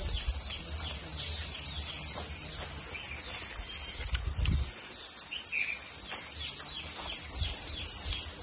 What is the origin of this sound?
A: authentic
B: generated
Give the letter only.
A